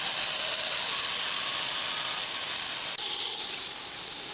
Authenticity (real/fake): real